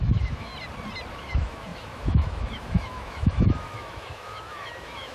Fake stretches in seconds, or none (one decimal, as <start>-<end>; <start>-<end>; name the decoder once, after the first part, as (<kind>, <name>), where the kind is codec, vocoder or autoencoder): 0.0-0.5 (autoencoder, DAC-VAE); 1.1-5.1